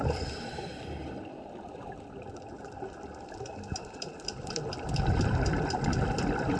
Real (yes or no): no